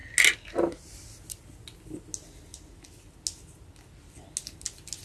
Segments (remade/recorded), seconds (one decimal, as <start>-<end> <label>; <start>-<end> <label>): 0.0-5.0 recorded